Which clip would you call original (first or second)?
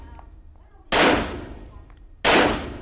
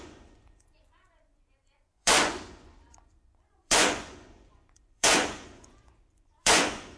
first